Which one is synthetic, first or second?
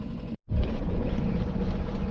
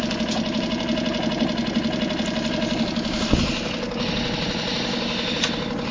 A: first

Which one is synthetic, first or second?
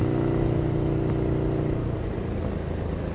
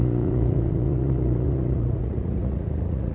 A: second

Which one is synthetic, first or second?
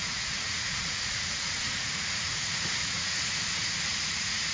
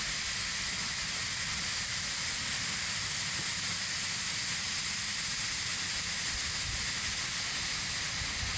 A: first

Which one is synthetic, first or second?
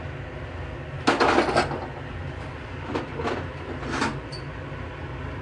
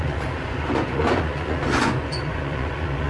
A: second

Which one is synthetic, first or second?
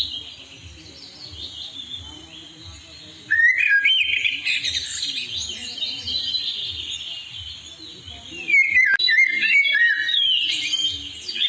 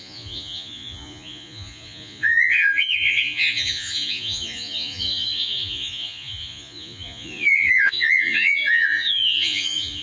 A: second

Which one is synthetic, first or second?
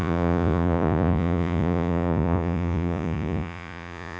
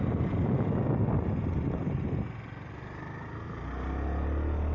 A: first